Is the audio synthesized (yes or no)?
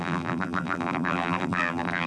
yes